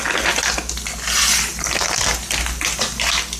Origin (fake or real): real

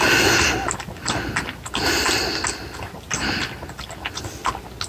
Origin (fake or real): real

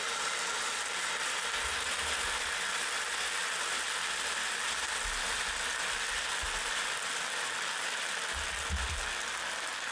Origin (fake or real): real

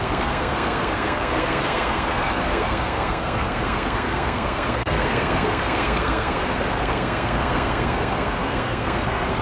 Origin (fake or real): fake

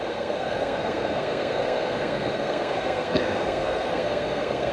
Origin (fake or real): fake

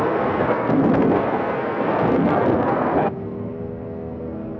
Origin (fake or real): fake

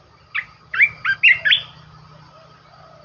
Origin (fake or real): real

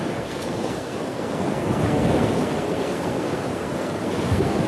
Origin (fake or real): fake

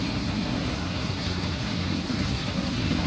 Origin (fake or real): fake